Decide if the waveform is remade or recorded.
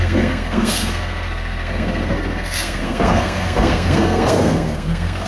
remade